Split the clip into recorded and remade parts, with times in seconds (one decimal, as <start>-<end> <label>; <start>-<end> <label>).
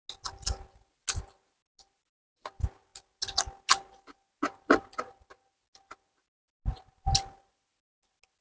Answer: 0.0-8.4 recorded